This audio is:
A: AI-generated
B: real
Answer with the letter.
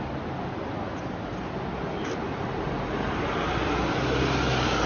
B